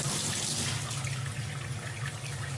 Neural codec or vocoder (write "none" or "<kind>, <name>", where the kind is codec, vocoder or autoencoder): none